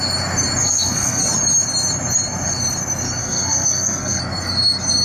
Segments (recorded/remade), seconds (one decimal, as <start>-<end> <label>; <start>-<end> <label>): 0.0-0.6 recorded; 0.6-1.3 remade; 1.3-3.2 recorded; 3.2-4.2 remade; 4.2-5.0 recorded